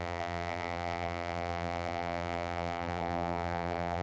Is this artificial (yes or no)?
yes